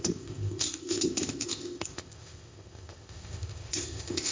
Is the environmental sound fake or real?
fake